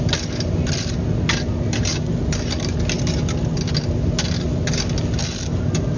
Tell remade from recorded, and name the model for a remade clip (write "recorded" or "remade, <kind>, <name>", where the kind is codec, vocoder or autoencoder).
recorded